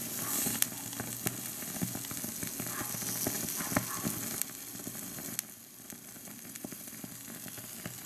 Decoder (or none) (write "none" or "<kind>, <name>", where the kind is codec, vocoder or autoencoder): none